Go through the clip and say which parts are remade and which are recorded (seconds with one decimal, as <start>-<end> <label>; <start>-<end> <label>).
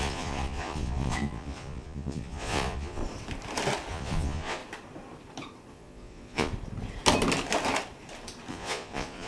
0.0-3.0 remade; 3.0-3.9 recorded; 3.9-4.6 remade; 4.6-5.7 recorded; 5.7-6.5 remade; 6.5-8.5 recorded; 8.5-9.3 remade